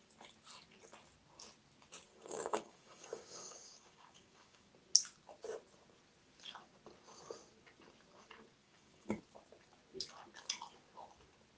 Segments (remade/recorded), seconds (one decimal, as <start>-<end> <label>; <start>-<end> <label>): 0.0-2.1 recorded; 2.1-4.7 remade; 4.7-8.6 recorded; 8.6-9.2 remade; 9.2-11.6 recorded